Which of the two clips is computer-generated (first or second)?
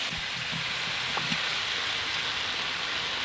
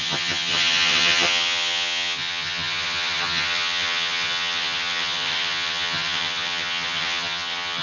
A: second